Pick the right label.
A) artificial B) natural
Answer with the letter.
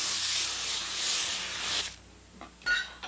B